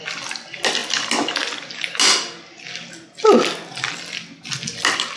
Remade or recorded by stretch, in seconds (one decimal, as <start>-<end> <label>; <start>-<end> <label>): 0.0-5.2 recorded